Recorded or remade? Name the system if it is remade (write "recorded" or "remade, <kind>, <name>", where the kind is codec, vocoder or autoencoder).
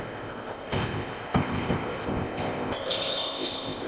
remade, codec, ZipCodec